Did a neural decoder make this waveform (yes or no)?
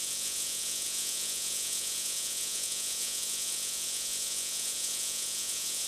yes